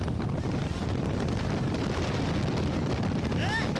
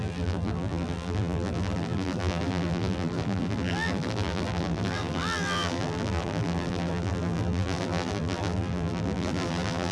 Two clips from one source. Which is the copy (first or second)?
second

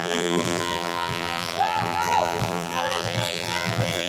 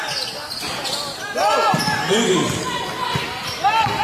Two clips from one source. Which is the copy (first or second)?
first